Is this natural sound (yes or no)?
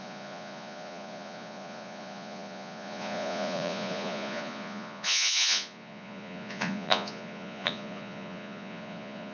no